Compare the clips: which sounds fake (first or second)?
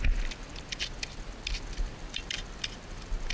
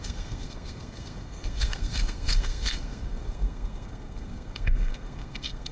second